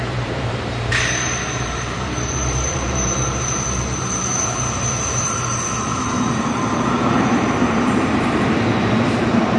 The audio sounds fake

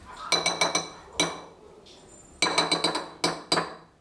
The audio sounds real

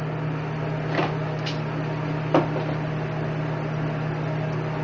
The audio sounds real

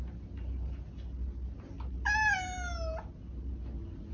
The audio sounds real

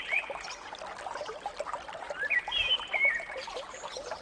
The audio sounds fake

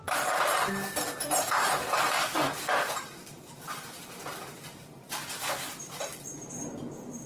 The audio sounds fake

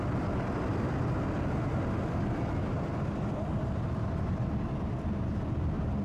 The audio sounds real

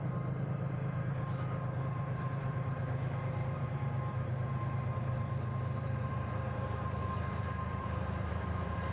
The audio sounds fake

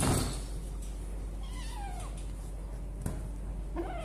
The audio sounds real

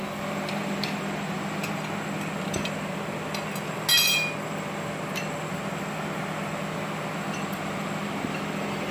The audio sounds real